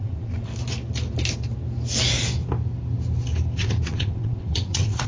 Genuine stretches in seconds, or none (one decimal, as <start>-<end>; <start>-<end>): 0.5-3.6